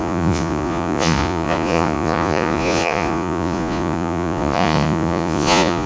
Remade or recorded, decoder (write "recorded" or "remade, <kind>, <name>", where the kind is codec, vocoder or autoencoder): remade, vocoder, Vocos